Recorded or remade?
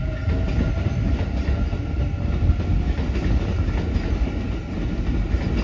recorded